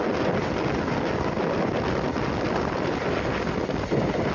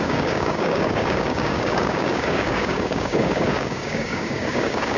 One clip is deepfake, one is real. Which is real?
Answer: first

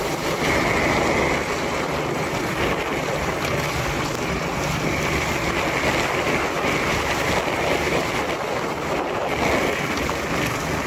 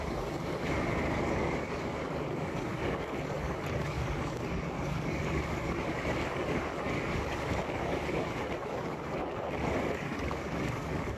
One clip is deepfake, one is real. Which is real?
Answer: first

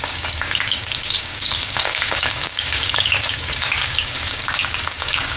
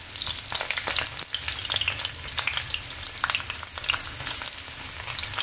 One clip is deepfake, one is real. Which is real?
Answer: second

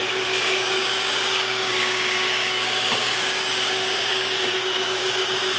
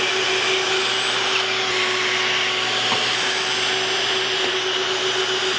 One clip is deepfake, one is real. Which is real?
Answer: second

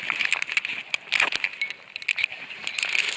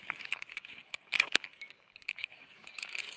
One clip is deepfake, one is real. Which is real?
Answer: first